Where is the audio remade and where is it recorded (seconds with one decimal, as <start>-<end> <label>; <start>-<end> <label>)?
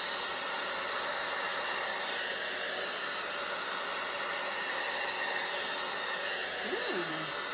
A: 0.0-1.5 recorded; 1.5-3.5 remade; 3.5-6.4 recorded; 6.4-7.1 remade; 7.1-7.5 recorded